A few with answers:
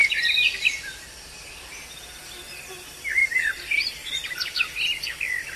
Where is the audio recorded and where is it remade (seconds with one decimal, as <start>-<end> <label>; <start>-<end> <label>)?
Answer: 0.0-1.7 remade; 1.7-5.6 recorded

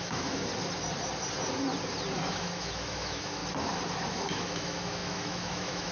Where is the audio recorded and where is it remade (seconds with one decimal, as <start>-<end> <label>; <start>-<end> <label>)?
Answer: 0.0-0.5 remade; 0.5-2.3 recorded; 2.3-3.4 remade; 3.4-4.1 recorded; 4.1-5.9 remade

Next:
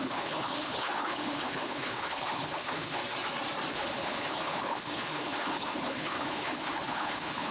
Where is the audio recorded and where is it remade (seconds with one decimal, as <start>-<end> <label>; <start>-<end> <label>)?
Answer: 0.0-3.0 remade; 3.0-3.7 recorded; 3.7-7.5 remade